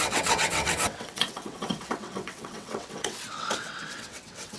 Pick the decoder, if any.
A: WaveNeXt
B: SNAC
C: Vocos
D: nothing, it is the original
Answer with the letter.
A